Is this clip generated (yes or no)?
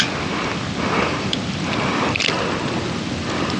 no